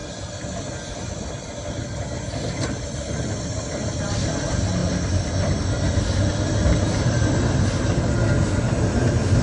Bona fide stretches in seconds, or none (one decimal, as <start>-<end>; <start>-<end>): 0.0-9.4